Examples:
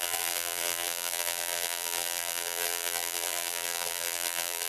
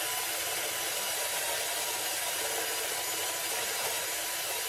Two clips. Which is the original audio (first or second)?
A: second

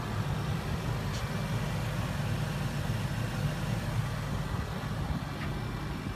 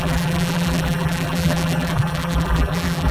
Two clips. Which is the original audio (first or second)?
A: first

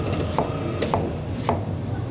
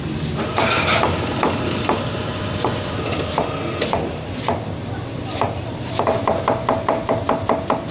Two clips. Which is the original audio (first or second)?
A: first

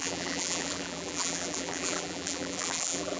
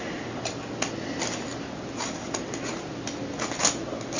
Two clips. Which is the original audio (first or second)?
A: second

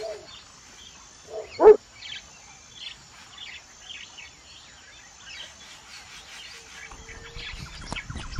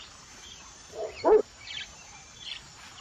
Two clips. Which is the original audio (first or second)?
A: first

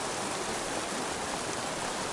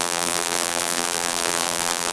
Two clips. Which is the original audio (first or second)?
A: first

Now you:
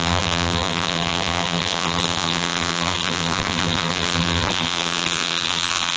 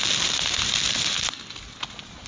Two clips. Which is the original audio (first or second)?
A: second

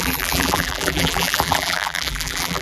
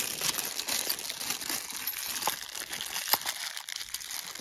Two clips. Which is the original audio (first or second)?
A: second